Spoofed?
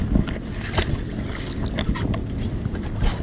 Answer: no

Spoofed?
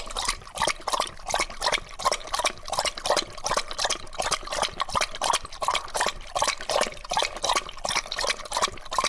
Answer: no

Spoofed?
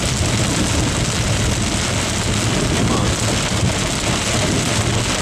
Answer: no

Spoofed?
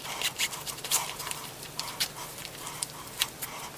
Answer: yes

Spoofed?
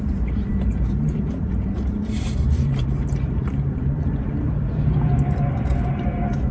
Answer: yes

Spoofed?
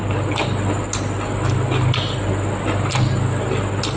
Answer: no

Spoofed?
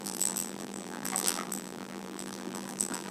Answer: yes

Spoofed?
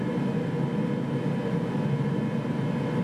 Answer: no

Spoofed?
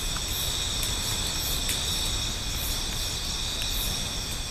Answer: no